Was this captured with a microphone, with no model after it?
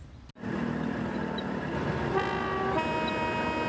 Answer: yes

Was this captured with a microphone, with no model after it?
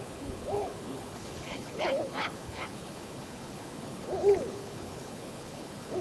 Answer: no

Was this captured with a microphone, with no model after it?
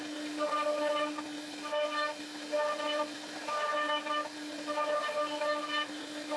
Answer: yes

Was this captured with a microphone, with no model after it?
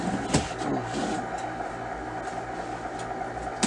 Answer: yes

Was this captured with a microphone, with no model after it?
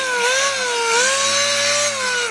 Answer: yes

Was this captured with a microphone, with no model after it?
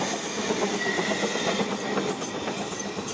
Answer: yes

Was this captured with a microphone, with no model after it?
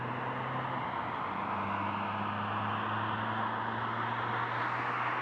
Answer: yes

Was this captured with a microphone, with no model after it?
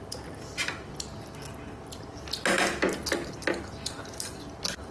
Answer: yes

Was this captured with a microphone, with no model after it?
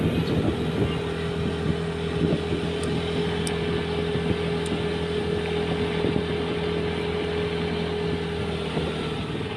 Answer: yes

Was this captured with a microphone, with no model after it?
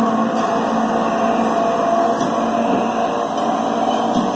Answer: yes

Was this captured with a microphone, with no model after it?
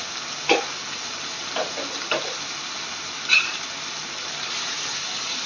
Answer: yes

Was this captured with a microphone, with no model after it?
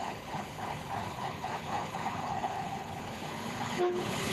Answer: no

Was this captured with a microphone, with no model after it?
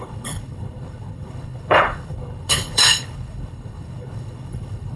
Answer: no